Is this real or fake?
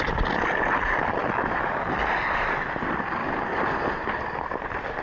real